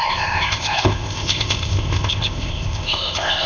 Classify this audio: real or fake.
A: fake